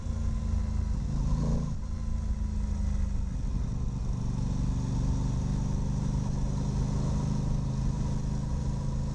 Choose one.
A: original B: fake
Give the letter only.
A